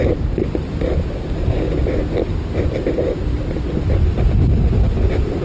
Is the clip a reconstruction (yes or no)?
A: no